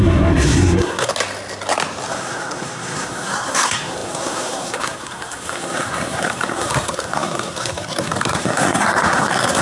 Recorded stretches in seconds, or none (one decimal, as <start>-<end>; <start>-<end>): 1.1-2.1